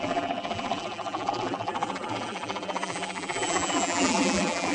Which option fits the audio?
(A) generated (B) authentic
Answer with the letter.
A